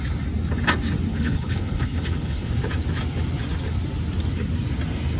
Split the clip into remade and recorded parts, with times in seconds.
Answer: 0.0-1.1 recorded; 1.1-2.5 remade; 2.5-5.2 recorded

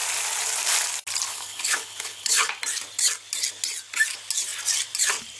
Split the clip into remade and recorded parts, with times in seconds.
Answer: 0.0-1.3 recorded; 1.3-2.5 remade; 2.5-5.4 recorded

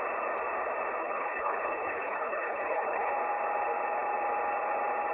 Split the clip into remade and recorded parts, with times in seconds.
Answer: 0.0-1.0 recorded; 1.0-3.1 remade; 3.1-5.1 recorded